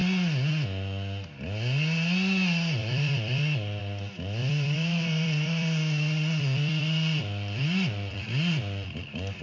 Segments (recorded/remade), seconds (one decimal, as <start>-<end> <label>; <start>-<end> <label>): 0.0-2.8 recorded; 2.8-3.8 remade; 3.8-4.4 recorded; 4.4-9.4 remade